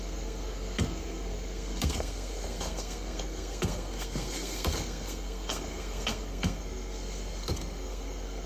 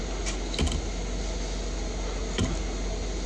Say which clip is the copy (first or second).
first